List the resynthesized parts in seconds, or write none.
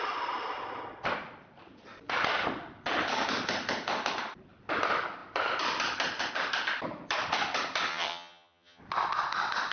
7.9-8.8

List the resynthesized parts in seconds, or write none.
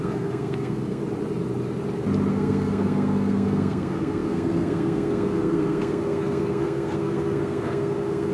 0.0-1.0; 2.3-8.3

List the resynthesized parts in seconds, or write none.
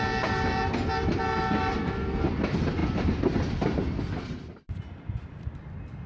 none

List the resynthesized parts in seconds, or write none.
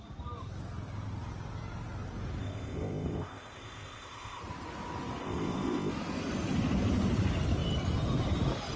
2.4-4.4; 5.2-5.9